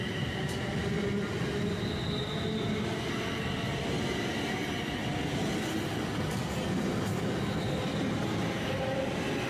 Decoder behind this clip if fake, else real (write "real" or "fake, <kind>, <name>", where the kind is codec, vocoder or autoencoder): real